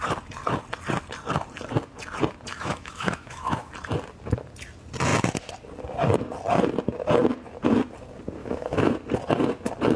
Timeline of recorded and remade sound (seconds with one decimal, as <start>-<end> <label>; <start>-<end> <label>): 0.0-2.5 recorded; 2.5-3.7 remade; 3.7-8.4 recorded; 8.4-8.9 remade; 8.9-10.0 recorded